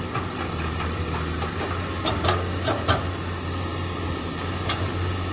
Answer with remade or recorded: recorded